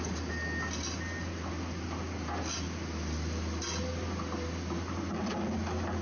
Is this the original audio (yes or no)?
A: yes